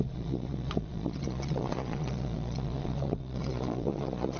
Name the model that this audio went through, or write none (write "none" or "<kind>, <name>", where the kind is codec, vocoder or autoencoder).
vocoder, Vocos